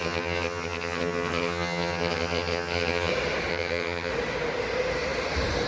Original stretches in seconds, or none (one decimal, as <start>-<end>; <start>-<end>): 3.1-3.5; 4.1-5.7